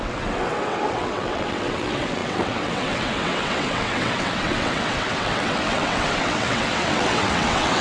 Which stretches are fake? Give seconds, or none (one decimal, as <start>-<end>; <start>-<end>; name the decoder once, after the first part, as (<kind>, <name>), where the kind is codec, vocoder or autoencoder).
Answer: 0.0-7.8 (vocoder, WaveNeXt)